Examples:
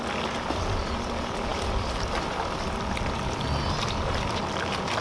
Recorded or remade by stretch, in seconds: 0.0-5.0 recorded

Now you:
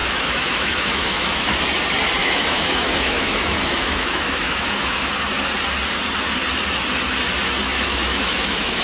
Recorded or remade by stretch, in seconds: 0.0-1.6 remade; 1.6-2.2 recorded; 2.2-5.1 remade; 5.1-7.7 recorded; 7.7-8.8 remade